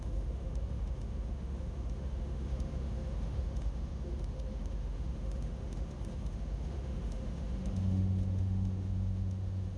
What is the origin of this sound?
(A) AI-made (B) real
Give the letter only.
A